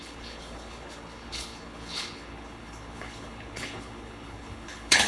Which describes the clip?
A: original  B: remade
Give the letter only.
B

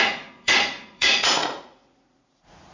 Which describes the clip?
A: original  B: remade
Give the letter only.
B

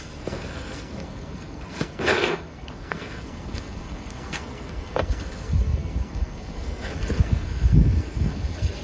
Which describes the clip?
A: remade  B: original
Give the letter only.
A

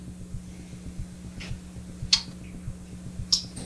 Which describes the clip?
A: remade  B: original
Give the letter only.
B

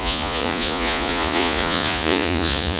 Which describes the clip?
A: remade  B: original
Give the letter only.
A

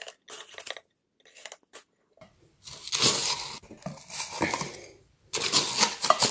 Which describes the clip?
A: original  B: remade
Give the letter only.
A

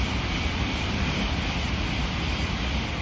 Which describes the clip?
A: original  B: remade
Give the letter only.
A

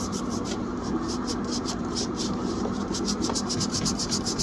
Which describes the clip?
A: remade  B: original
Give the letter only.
A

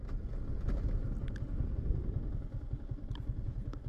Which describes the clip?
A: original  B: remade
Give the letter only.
A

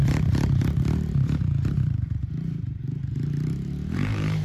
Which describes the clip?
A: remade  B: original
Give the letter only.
A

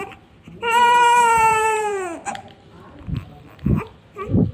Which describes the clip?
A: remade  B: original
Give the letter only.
A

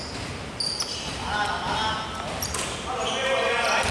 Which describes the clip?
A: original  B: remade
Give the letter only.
A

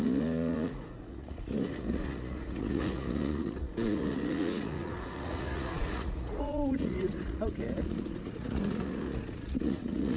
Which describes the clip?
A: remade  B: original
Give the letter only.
A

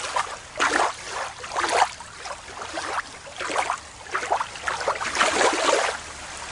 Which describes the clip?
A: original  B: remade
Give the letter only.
A